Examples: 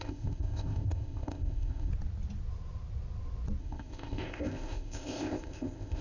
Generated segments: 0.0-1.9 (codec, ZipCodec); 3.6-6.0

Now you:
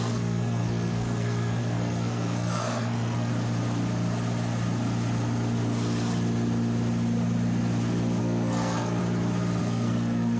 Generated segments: 0.0-3.3 (codec, SNAC); 8.2-9.0; 9.6-10.4